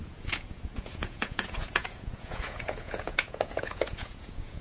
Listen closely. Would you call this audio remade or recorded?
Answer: remade